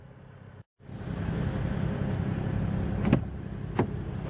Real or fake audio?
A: real